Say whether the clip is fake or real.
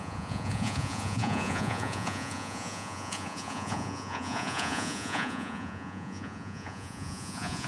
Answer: fake